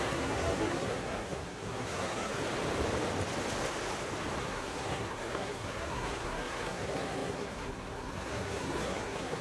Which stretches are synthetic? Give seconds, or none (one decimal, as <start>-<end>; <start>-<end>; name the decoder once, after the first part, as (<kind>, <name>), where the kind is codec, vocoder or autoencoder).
0.0-2.4 (codec, SNAC); 4.4-9.4